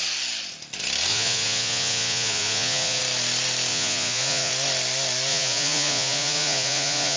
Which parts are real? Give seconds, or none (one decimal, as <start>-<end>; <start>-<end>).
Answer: 0.0-1.1; 3.0-3.7; 4.5-5.3